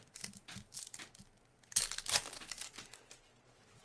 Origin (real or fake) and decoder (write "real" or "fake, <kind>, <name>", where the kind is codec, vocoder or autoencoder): real